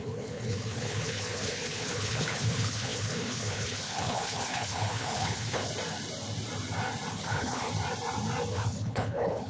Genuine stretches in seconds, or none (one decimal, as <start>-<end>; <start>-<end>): 5.7-7.1; 7.7-8.5